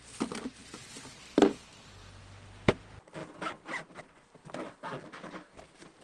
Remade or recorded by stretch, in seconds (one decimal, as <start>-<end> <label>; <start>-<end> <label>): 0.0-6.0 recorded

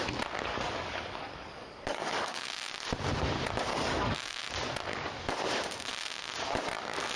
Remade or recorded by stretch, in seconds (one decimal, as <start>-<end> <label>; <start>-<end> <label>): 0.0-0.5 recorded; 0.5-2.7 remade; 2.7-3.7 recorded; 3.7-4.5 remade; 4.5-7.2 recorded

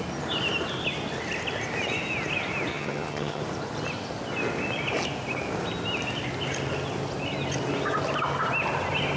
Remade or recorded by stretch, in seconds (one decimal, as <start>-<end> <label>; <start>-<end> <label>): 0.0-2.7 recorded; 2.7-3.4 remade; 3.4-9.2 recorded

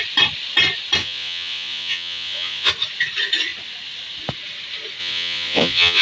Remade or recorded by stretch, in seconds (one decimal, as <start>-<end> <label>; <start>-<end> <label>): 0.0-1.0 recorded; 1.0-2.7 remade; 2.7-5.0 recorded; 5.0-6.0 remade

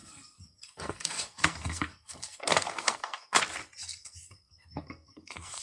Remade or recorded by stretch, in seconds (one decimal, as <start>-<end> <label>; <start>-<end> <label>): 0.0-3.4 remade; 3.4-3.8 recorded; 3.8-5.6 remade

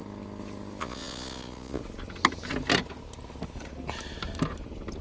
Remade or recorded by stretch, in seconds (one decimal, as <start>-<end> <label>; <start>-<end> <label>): 0.0-0.8 recorded; 0.8-1.8 remade; 1.8-5.0 recorded

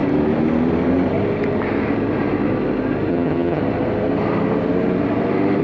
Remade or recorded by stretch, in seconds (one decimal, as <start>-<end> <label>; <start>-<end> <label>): 0.0-3.1 recorded; 3.1-3.6 remade; 3.6-5.6 recorded